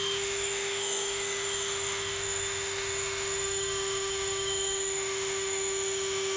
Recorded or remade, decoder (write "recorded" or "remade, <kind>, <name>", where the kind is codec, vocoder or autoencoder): remade, autoencoder, DAC-VAE